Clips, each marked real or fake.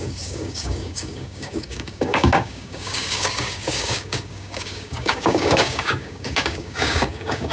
fake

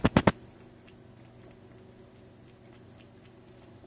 real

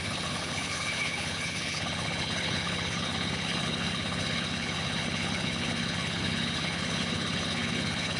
fake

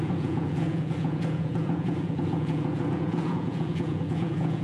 fake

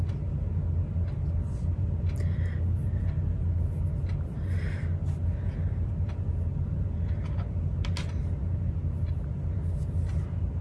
real